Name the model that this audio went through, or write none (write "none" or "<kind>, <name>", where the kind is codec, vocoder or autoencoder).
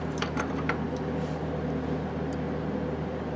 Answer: vocoder, BigVGAN v2